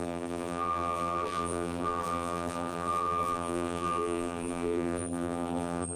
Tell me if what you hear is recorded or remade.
remade